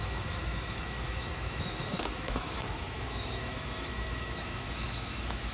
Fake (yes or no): yes